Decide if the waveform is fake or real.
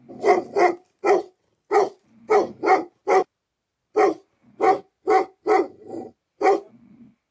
real